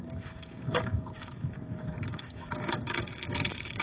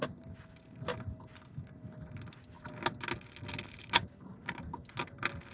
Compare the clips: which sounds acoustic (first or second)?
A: second